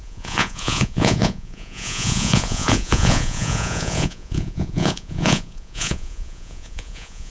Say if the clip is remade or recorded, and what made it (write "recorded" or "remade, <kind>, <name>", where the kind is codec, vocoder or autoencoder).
remade, vocoder, Vocos